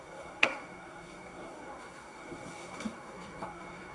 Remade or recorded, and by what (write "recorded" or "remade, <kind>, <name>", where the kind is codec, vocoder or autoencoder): remade, codec, SNAC